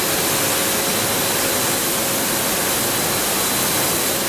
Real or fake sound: real